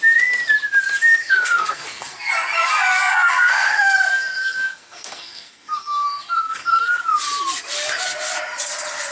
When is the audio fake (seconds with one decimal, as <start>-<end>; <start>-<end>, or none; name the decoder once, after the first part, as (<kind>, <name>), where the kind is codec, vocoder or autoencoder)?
1.2-2.3 (codec, SNAC); 2.9-7.0